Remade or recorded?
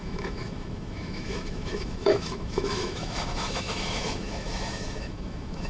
remade